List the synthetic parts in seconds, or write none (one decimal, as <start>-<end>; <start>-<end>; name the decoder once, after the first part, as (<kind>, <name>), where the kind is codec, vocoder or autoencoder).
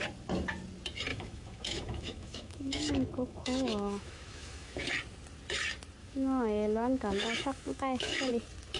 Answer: 1.1-4.9 (autoencoder, DAC-VAE); 6.0-8.3